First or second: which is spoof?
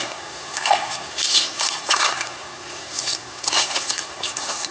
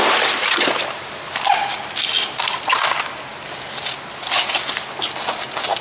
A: first